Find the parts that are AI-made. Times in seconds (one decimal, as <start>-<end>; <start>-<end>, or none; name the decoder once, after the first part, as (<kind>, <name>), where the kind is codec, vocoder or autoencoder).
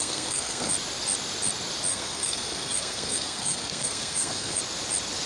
0.0-0.7 (codec, SNAC); 1.9-4.6